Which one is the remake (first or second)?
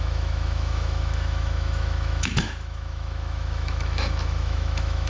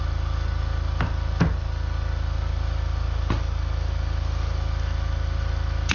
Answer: first